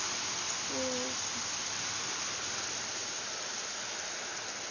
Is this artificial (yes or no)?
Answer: no